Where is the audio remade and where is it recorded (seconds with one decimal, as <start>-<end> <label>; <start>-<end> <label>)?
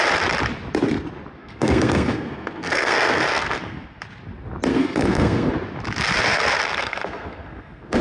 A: 0.0-1.4 recorded; 1.4-4.0 remade; 4.0-4.7 recorded; 4.7-5.5 remade; 5.5-6.7 recorded; 6.7-8.0 remade